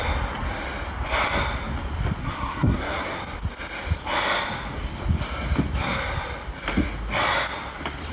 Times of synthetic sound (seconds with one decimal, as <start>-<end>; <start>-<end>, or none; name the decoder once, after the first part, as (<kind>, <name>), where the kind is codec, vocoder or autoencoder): 2.2-3.2 (codec, SNAC)